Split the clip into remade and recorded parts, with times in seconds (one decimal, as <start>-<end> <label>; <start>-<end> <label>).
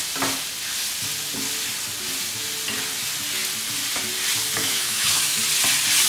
0.0-4.6 recorded; 4.6-5.4 remade; 5.4-6.1 recorded